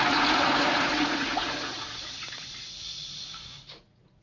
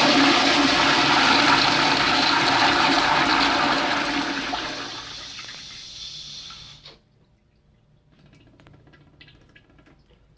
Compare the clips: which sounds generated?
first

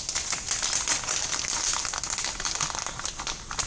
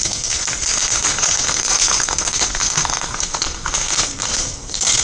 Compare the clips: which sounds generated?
second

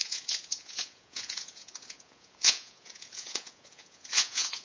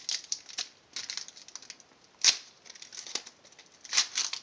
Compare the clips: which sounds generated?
first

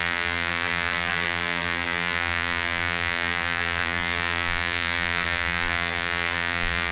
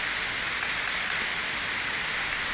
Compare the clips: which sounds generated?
first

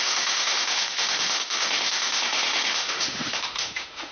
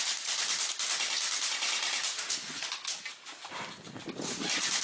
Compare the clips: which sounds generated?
first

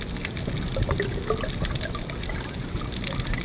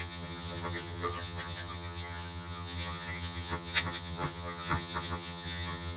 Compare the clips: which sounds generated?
second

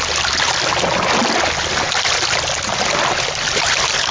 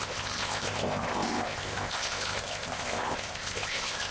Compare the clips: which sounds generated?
second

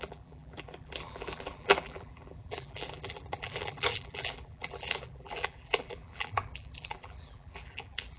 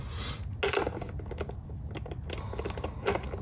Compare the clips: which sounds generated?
first